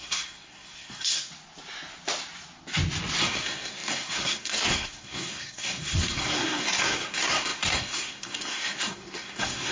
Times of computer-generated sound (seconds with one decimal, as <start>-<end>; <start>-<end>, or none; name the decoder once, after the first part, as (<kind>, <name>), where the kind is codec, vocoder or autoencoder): 0.0-1.3 (codec, SNAC); 3.2-9.7